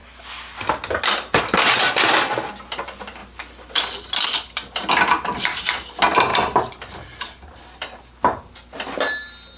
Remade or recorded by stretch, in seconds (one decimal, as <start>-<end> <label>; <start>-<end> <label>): 0.0-9.6 recorded